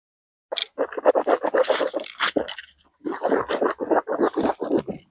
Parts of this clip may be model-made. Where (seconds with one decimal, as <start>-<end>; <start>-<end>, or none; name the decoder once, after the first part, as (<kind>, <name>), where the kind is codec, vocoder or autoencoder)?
1.6-4.5 (vocoder, BigVGAN v2)